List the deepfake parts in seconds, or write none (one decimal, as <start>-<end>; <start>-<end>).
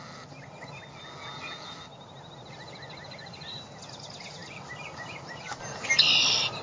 none